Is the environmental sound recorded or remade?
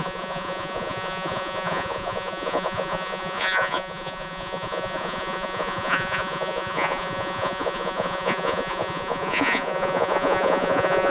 remade